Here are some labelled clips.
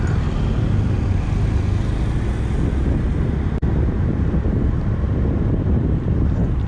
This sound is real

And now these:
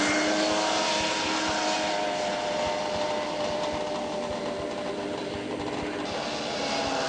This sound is real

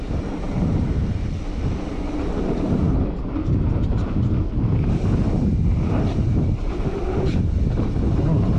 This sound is real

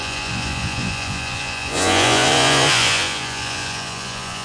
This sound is fake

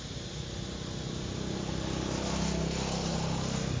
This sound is real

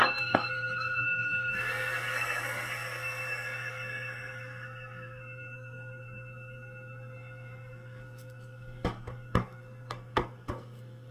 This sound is fake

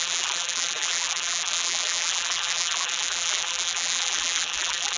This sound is fake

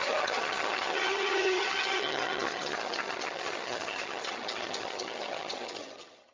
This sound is fake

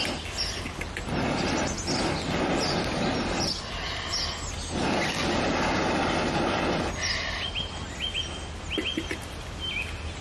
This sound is real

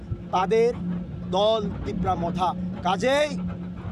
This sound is real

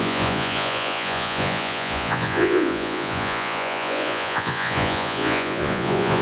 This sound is fake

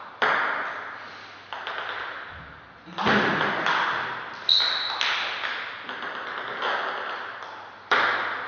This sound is real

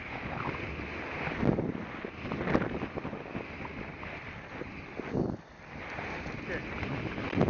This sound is real